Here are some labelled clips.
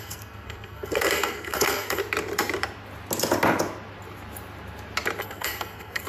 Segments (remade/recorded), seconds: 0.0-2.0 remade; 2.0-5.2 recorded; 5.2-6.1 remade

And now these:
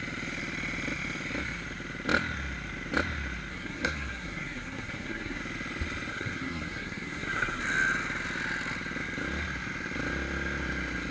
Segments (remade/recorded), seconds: 0.0-3.5 recorded; 3.5-5.4 remade; 5.4-6.1 recorded; 6.1-7.6 remade; 7.6-11.1 recorded

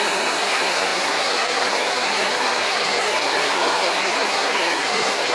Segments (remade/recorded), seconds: 0.0-5.3 remade

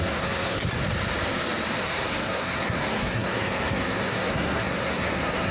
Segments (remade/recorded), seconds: 0.0-0.6 remade; 0.6-1.8 recorded; 1.8-5.5 remade